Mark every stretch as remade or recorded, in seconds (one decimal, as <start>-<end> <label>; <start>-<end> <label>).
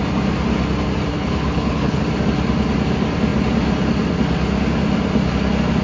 0.0-1.1 recorded; 1.1-2.0 remade; 2.0-5.8 recorded